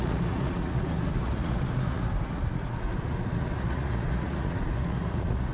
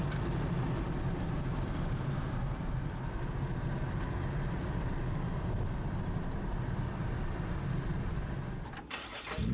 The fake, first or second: first